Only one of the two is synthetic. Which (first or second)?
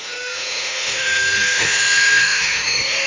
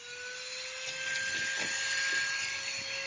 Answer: first